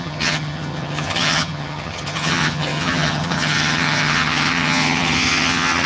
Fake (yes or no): yes